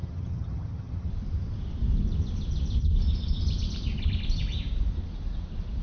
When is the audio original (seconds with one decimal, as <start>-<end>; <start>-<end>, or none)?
1.1-5.8